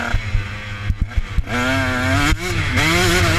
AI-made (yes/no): no